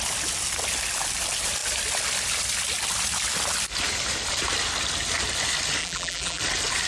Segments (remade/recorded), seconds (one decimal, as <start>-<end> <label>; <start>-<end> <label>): 0.0-5.8 recorded; 5.8-6.4 remade; 6.4-6.9 recorded